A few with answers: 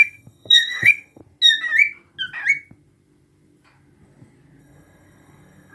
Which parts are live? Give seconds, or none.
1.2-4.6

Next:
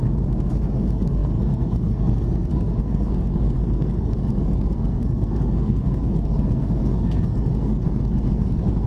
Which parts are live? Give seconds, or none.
none

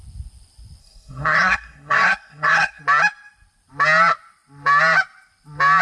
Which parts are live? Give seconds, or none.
0.0-0.8; 2.8-5.8

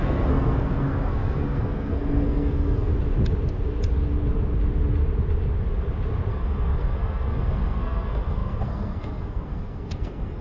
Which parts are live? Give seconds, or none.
2.9-6.3

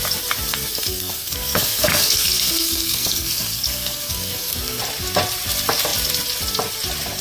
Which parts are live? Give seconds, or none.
0.0-0.5; 4.8-7.2

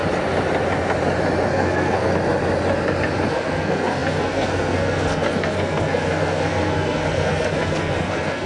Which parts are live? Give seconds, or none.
0.0-1.5; 2.1-3.3